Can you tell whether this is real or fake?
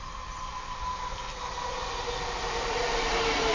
fake